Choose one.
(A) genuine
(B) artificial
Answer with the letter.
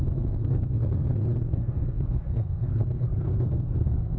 B